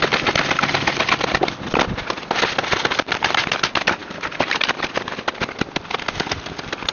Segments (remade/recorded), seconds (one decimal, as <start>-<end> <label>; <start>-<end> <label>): 0.0-6.9 recorded